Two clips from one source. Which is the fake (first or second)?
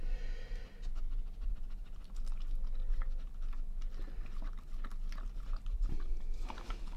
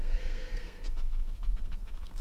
second